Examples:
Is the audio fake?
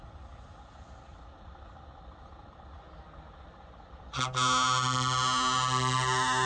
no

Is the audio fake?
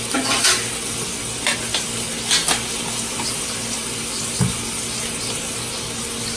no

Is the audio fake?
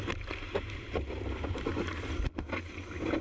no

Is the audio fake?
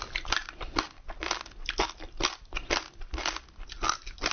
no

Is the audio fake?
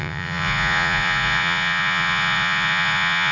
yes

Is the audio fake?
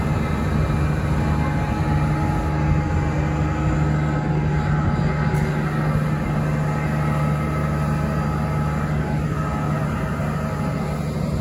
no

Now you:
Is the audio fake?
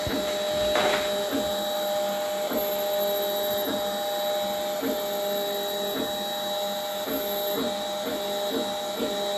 no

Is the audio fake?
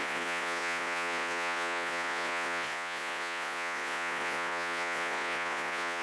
yes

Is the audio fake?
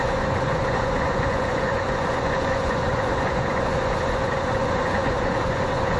yes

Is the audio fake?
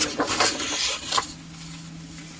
no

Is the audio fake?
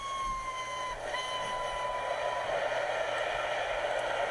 no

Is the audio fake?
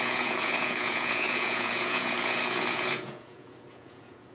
yes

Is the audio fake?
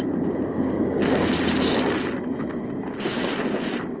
no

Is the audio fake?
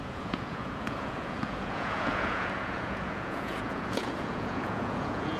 yes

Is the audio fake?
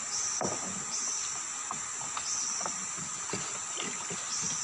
no